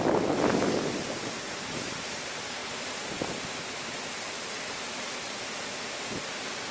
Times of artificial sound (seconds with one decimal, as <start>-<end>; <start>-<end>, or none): none

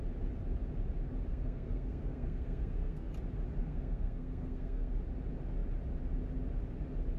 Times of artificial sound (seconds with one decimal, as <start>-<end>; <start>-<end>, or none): 1.3-3.1; 3.6-5.0

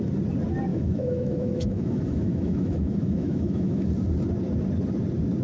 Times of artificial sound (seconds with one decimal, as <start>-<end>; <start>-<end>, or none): 0.7-3.9